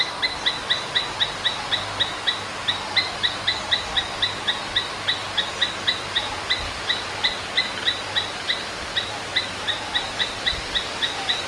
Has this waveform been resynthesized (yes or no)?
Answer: no